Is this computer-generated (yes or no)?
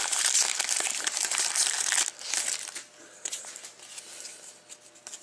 no